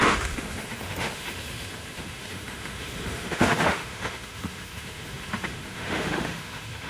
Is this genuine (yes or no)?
no